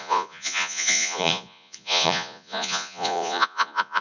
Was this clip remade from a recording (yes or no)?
yes